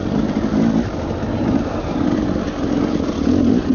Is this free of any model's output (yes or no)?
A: yes